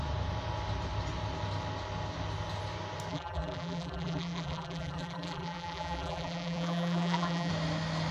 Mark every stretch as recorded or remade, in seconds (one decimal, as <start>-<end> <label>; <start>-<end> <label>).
0.0-3.1 recorded; 3.1-7.5 remade; 7.5-8.1 recorded